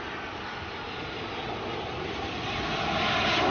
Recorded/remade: remade